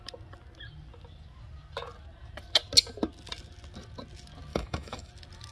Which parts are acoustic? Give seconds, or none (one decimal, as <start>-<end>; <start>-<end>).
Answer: 0.0-4.5; 5.1-5.5